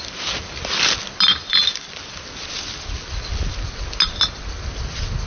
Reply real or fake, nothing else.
real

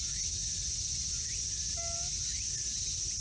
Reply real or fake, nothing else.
real